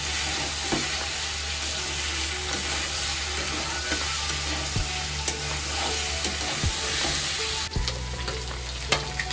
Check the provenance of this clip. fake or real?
real